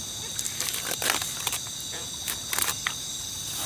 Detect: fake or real real